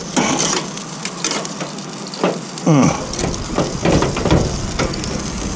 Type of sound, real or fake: real